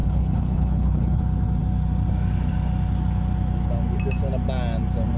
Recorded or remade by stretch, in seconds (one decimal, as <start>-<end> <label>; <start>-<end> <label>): 0.0-1.2 remade; 1.2-5.2 recorded

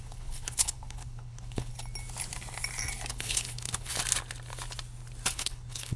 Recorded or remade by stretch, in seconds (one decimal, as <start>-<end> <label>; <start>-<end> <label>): 0.0-1.7 remade; 1.7-3.1 recorded; 3.1-4.0 remade; 4.0-5.3 recorded; 5.3-6.0 remade

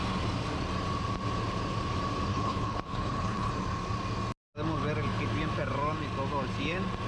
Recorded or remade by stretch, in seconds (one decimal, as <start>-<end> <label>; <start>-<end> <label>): 0.0-2.3 recorded; 2.3-3.5 remade; 3.5-7.1 recorded

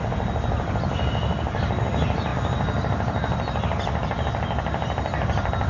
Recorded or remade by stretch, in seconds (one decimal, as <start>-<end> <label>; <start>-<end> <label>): 0.0-5.7 recorded